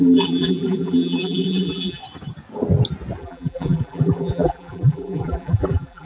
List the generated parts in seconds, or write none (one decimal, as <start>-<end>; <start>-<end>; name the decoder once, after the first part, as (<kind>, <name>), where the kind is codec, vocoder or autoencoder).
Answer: 0.0-2.0 (vocoder, BigVGAN v2); 3.2-6.1